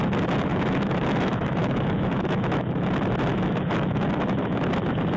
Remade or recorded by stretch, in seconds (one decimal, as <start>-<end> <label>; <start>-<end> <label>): 0.0-0.5 recorded; 0.5-2.9 remade; 2.9-3.3 recorded; 3.3-4.6 remade; 4.6-5.2 recorded